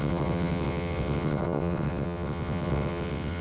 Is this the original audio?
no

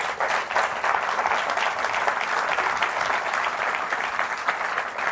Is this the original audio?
yes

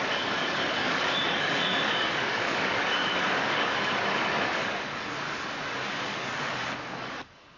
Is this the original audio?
no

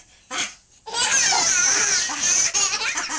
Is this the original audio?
no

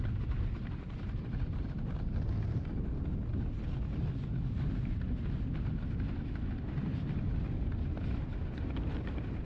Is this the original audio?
yes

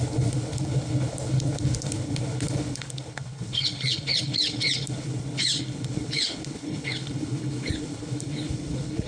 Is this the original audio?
no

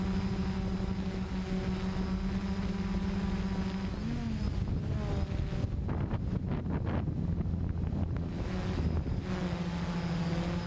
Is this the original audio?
yes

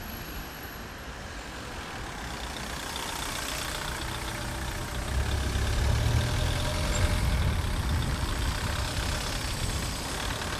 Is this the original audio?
yes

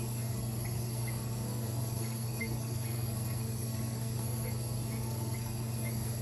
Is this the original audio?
no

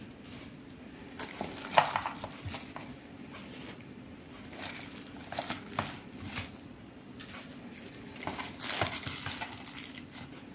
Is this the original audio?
yes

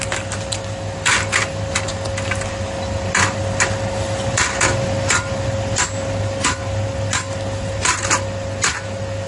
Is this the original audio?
yes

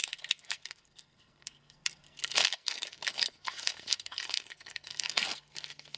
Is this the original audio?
no